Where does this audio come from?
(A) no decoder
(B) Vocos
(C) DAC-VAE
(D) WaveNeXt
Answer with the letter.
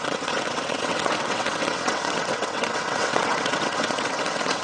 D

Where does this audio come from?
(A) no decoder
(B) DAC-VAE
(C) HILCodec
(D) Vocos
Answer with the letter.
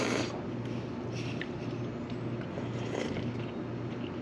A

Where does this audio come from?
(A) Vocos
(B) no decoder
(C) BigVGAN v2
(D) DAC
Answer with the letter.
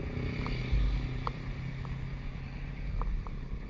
B